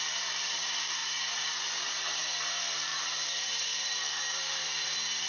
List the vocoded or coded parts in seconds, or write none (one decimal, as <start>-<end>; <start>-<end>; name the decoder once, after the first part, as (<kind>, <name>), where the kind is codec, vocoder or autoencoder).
0.0-5.3 (vocoder, BigVGAN v2)